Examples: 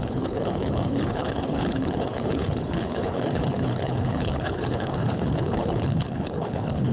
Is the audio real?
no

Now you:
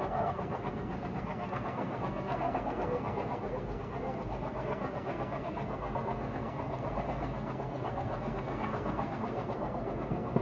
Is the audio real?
no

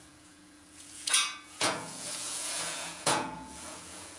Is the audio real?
no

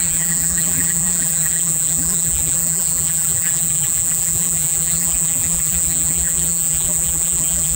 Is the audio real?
no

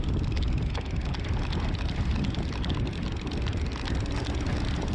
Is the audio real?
yes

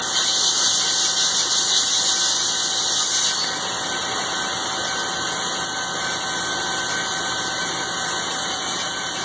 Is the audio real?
yes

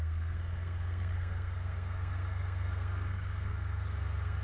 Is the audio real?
no